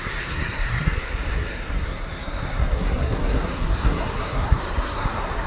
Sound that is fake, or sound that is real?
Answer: fake